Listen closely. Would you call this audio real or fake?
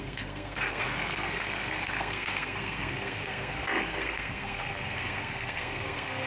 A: fake